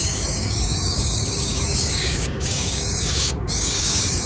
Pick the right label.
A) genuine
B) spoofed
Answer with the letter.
B